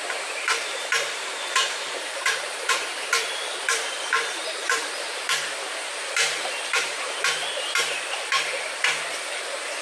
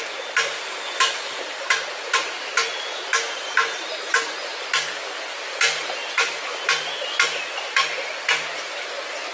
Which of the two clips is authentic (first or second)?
second